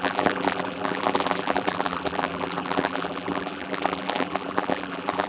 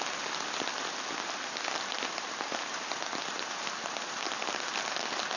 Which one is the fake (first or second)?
first